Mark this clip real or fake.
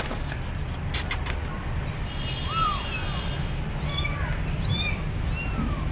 real